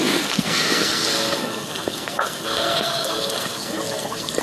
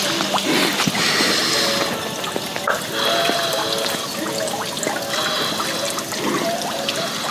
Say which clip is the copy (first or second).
first